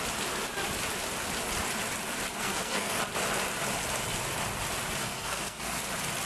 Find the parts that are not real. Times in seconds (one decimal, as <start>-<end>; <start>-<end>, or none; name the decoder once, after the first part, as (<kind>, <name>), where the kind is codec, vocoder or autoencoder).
2.3-3.0 (codec, SNAC); 5.0-5.8